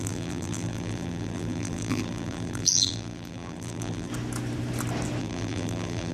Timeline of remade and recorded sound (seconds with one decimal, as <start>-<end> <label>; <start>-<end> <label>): 0.0-4.1 remade; 4.1-5.2 recorded; 5.2-6.1 remade